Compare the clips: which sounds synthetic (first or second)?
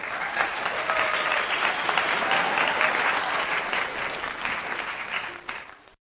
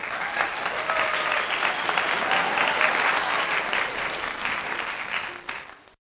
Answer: first